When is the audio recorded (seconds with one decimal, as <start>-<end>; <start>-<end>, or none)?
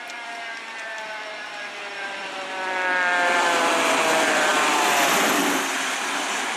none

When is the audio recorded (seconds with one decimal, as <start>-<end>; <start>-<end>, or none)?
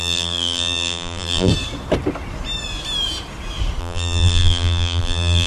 1.5-3.8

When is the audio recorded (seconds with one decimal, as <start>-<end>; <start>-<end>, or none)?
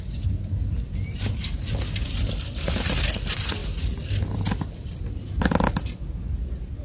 0.0-6.8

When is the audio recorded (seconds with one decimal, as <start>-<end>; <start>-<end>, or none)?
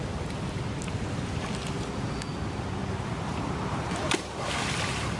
0.0-2.8; 4.5-5.2